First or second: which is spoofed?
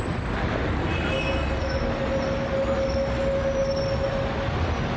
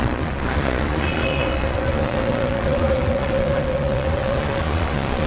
second